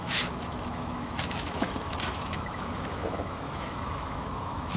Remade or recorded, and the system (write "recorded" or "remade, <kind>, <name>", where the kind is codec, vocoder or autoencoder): remade, autoencoder, DAC-VAE